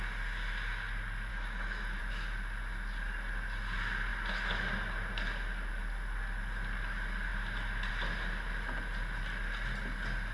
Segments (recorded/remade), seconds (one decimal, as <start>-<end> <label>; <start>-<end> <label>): 0.0-1.3 recorded; 1.3-2.0 remade; 2.0-10.3 recorded